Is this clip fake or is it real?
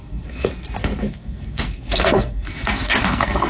fake